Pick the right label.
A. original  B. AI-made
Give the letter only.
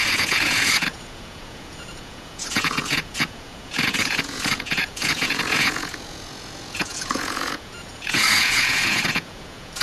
B